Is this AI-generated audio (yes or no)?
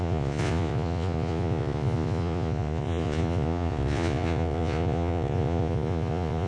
yes